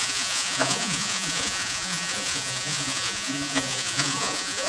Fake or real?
fake